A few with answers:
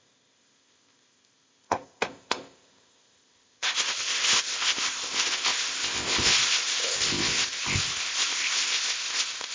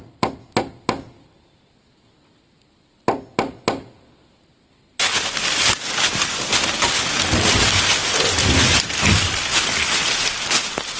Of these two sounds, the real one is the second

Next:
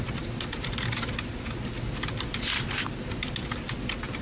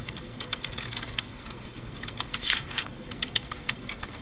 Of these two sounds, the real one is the first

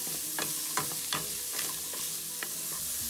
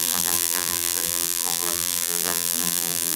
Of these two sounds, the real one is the first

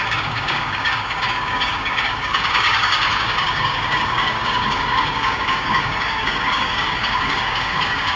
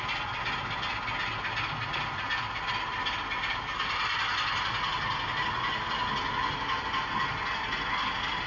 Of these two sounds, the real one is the second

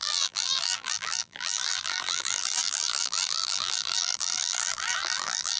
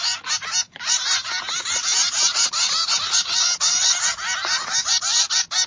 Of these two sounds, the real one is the second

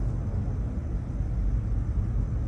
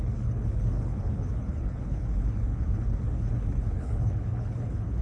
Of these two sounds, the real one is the first